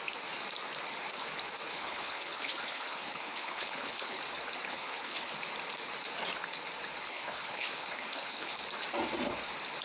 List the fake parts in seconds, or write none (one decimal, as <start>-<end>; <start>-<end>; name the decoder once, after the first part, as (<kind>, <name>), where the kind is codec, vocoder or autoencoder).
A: 1.7-4.2 (codec, HILCodec); 4.7-5.3; 7.1-8.5